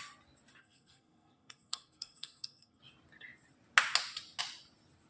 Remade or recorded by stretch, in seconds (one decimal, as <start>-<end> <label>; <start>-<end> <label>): 0.0-0.6 recorded; 0.6-2.8 remade; 2.8-5.1 recorded